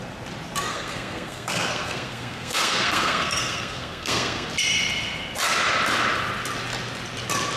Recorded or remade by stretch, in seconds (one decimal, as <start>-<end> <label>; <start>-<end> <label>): 0.0-0.7 recorded; 0.7-4.5 remade; 4.5-7.6 recorded